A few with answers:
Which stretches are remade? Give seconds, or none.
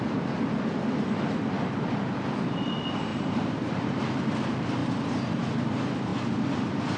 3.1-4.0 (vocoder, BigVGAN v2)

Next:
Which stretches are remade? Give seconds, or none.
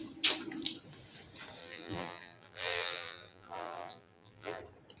1.6-4.6 (vocoder, BigVGAN v2)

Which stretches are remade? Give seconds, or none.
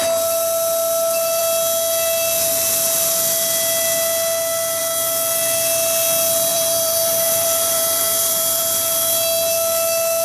6.5-8.6 (vocoder, BigVGAN v2)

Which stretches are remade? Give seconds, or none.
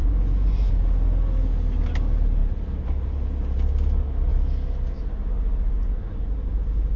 0.0-0.7 (vocoder, BigVGAN v2); 2.4-3.6